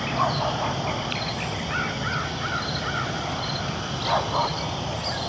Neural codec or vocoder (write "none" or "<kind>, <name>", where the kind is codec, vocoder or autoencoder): none